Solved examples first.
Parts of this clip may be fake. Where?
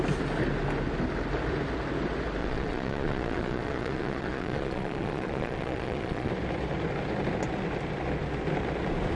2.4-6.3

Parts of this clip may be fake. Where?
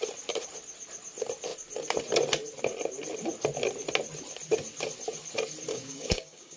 5.7-6.6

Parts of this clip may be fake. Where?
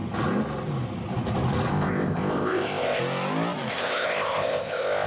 1.7-3.0; 3.7-5.1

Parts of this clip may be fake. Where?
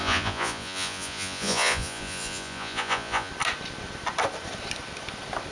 0.0-3.3